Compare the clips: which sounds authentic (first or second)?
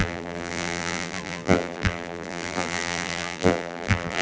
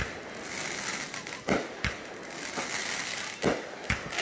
second